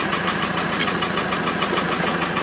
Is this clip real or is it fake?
fake